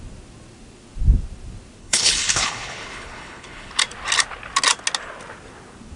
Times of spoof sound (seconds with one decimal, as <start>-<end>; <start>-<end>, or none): 1.8-3.7